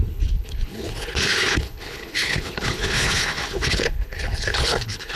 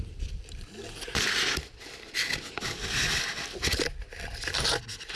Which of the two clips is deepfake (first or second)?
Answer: first